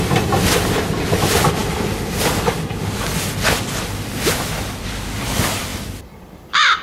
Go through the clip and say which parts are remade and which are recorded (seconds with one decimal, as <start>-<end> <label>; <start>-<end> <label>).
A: 0.0-5.7 recorded; 5.7-6.8 remade